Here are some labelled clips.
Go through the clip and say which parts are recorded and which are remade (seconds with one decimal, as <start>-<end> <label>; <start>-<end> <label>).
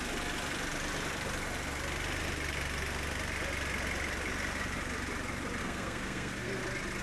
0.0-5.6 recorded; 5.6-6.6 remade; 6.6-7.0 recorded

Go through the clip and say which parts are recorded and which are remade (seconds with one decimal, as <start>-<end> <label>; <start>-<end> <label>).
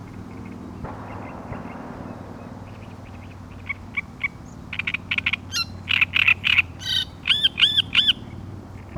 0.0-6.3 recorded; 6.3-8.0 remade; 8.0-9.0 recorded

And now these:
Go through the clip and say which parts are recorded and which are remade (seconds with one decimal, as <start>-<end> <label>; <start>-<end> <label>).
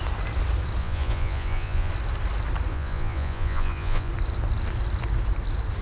0.0-0.8 recorded; 0.8-1.9 remade; 1.9-2.7 recorded; 2.7-4.1 remade; 4.1-5.8 recorded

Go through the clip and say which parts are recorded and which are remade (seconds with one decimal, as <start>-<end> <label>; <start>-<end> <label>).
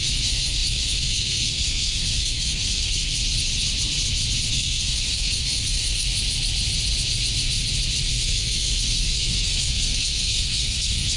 0.0-3.2 remade; 3.2-4.5 recorded; 4.5-6.1 remade; 6.1-8.1 recorded; 8.1-11.2 remade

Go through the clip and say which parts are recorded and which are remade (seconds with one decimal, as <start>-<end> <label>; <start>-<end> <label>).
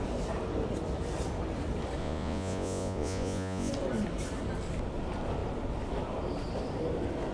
0.0-2.0 recorded; 2.0-3.7 remade; 3.7-7.3 recorded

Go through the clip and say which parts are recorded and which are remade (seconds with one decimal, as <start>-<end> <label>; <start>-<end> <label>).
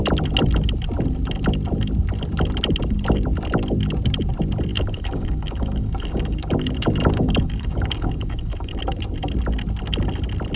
0.0-4.7 recorded; 4.7-8.8 remade; 8.8-10.6 recorded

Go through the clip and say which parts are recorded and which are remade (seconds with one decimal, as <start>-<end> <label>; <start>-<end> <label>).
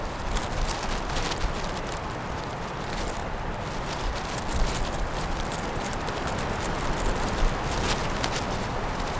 0.0-3.2 recorded; 3.2-7.5 remade; 7.5-8.0 recorded; 8.0-9.2 remade